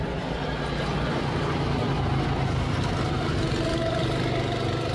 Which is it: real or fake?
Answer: real